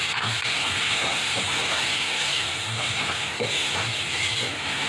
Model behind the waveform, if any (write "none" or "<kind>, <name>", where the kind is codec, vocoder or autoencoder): codec, SNAC